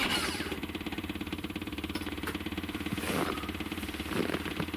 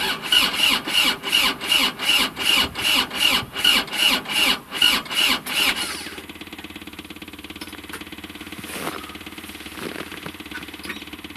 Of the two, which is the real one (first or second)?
second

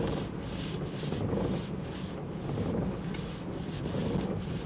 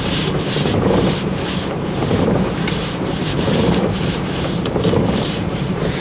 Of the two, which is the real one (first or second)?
first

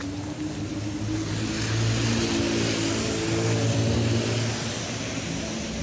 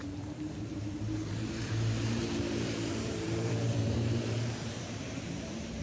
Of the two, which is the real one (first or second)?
first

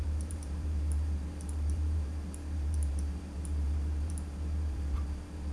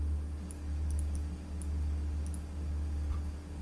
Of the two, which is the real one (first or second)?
second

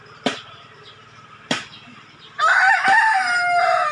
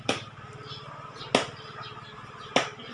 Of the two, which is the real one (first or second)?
second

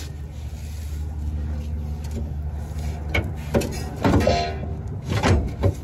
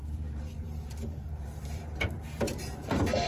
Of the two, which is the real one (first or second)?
first